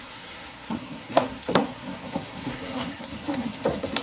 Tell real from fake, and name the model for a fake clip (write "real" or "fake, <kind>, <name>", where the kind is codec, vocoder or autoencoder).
fake, codec, SNAC